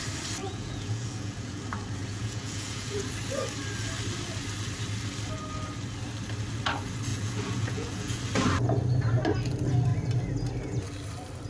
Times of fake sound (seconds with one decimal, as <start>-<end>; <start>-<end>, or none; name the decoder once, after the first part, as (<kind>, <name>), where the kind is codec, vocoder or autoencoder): 0.4-1.6 (vocoder, Vocos); 2.0-3.1; 7.1-8.2